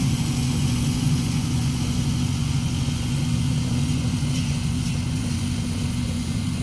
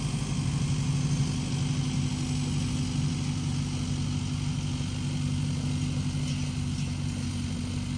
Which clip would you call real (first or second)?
second